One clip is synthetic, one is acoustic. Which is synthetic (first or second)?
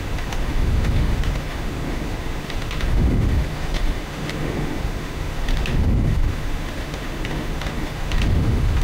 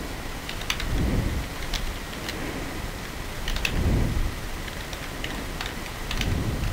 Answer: first